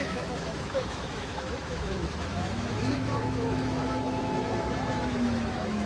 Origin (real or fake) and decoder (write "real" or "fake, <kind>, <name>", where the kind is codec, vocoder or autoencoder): fake, autoencoder, DAC-VAE